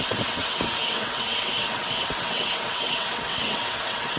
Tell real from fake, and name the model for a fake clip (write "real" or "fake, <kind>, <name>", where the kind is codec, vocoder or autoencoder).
fake, vocoder, WaveNeXt